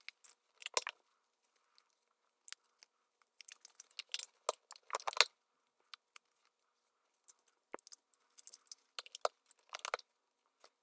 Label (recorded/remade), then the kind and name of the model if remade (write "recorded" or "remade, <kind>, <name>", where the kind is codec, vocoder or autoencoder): recorded